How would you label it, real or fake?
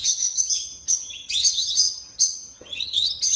fake